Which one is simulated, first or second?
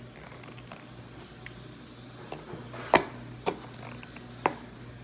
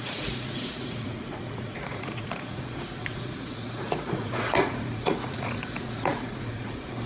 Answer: second